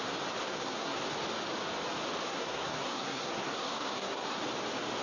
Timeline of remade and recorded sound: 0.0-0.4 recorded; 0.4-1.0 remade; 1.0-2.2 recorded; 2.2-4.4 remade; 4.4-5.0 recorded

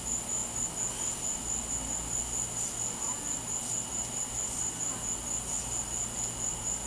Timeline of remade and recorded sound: 0.0-6.9 recorded

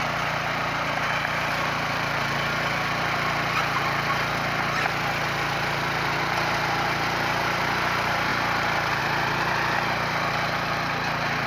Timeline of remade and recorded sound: 0.0-11.5 recorded

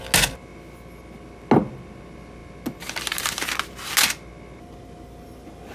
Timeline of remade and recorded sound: 0.0-5.7 recorded

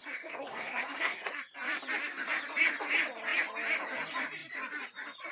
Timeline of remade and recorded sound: 0.0-1.4 remade; 1.4-5.3 recorded

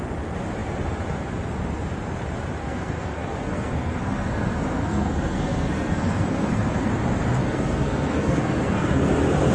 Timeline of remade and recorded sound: 0.0-2.6 recorded; 2.6-6.9 remade; 6.9-7.4 recorded; 7.4-9.1 remade; 9.1-9.5 recorded

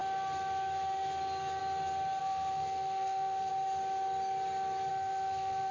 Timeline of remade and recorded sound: 0.0-2.2 recorded; 2.2-3.5 remade; 3.5-4.9 recorded; 4.9-5.7 remade

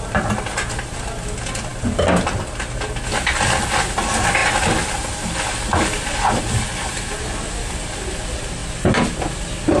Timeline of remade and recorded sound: 0.0-9.8 recorded